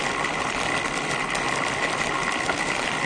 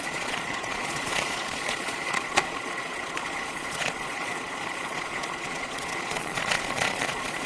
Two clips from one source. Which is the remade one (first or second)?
second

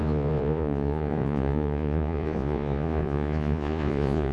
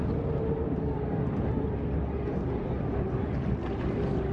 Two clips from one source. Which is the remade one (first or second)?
first